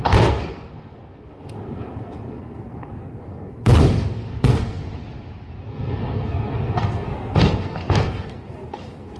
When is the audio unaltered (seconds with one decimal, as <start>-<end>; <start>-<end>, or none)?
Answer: 4.8-5.6